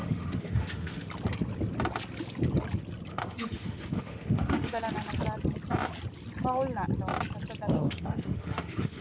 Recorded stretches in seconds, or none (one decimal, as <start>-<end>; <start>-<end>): 1.1-3.1; 4.8-7.7